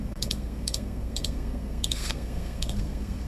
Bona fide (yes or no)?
no